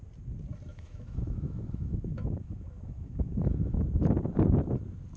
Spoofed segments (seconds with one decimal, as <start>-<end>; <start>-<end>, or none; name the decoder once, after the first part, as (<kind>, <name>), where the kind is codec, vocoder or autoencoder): 0.7-3.8 (autoencoder, DAC-VAE)